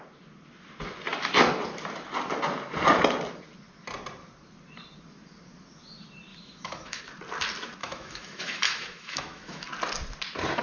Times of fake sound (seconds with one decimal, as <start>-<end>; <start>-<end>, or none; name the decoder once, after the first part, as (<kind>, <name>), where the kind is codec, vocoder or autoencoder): 6.3-7.0 (autoencoder, DAC-VAE); 7.8-9.7